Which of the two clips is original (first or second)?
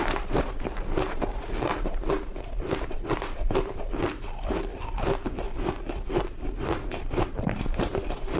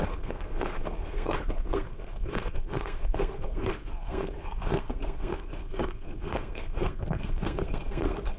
first